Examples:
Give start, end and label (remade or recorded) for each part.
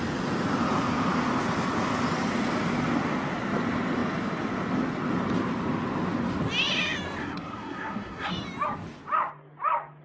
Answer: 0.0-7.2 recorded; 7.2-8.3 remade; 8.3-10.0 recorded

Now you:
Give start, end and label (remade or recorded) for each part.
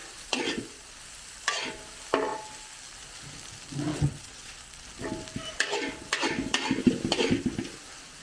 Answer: 0.0-3.9 recorded; 3.9-4.5 remade; 4.5-8.2 recorded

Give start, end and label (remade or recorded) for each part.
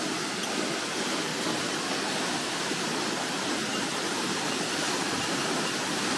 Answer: 0.0-6.2 recorded